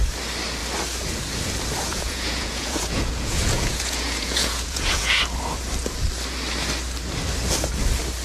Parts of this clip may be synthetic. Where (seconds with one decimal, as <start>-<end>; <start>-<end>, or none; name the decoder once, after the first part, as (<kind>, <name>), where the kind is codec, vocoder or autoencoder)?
1.9-5.2 (vocoder, Vocos)